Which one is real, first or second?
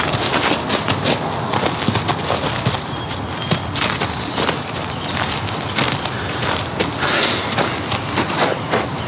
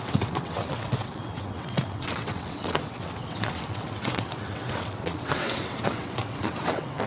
first